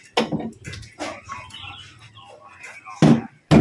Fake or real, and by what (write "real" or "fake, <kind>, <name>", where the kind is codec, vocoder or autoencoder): real